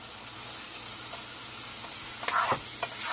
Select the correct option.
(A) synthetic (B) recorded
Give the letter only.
B